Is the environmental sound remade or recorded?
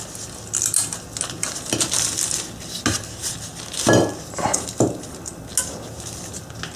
recorded